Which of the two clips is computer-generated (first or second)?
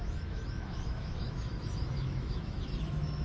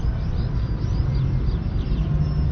first